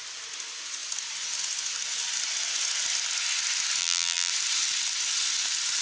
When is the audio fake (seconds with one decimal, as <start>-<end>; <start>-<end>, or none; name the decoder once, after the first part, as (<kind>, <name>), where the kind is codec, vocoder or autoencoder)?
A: 3.8-4.3 (vocoder, BigVGAN v2)